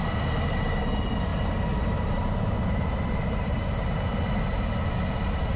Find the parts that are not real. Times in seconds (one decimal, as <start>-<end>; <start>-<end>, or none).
1.3-4.1